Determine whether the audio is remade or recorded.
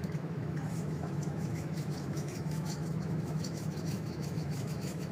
remade